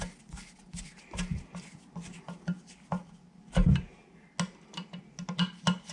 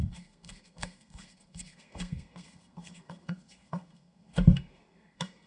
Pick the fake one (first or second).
second